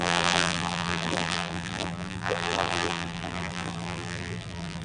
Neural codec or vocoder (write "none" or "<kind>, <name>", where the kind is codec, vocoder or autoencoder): vocoder, BigVGAN v2